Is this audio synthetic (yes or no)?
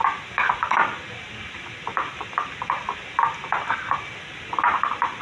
no